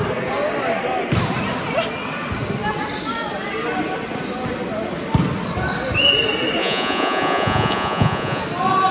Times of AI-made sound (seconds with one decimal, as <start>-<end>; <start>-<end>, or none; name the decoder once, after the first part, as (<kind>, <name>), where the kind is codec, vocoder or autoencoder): 6.6-8.4 (vocoder, Vocos)

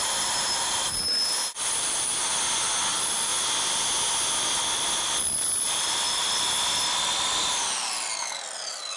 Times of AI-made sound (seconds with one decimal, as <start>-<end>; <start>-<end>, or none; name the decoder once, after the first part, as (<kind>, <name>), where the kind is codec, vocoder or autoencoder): 0.0-2.3 (vocoder, BigVGAN v2); 2.9-3.3; 4.2-6.2

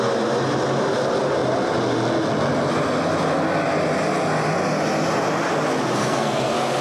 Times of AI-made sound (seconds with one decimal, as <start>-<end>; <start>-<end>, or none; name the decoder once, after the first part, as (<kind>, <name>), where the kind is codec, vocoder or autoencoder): 6.0-6.8 (codec, SNAC)

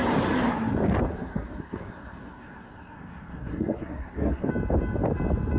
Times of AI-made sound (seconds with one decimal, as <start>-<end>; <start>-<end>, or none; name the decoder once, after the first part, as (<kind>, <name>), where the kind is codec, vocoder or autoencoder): 1.1-4.5 (codec, SNAC)

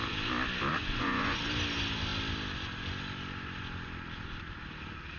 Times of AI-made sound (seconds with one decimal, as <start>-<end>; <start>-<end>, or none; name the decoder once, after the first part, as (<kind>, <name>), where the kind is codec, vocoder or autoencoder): 0.7-1.4 (vocoder, Vocos)

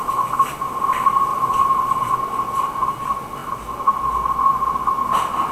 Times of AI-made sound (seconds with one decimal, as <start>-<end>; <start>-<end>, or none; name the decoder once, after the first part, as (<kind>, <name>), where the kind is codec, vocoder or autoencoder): 1.3-2.1 (vocoder, BigVGAN v2)

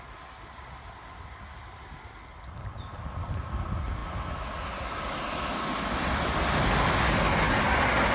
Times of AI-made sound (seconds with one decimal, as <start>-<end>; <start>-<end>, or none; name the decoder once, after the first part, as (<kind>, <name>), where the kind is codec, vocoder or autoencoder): none